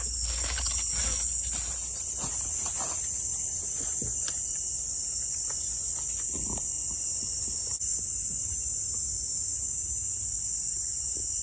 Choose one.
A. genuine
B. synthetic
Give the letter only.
A